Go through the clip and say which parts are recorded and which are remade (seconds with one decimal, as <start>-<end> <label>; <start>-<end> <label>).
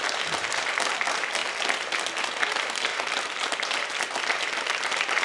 0.0-5.2 recorded